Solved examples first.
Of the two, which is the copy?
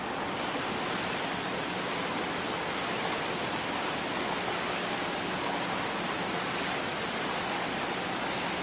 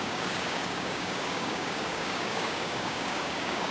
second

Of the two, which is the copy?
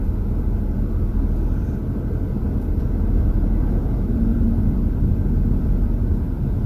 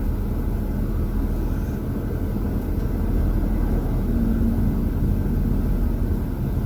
first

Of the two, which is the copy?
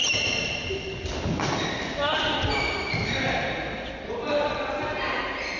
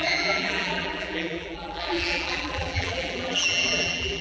second